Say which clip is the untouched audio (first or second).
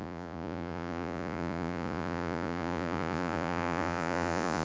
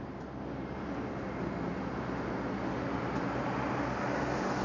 second